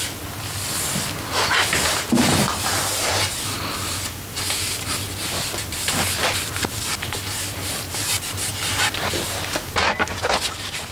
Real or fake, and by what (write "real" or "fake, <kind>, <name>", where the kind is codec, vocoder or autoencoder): real